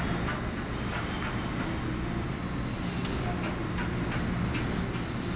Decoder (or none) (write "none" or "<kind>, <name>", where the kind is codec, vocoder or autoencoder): none